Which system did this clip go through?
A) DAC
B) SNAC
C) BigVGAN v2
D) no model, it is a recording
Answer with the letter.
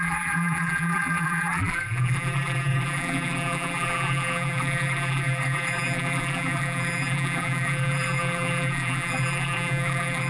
C